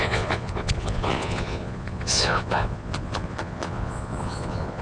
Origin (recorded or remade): remade